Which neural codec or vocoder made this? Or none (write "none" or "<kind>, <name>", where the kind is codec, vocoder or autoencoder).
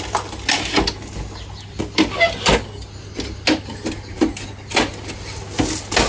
none